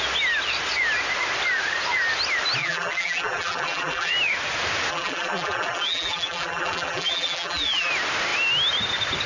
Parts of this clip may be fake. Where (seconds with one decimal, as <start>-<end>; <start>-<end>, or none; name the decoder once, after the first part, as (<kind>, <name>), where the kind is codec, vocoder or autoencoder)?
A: 2.6-4.1 (vocoder, BigVGAN v2); 4.9-7.9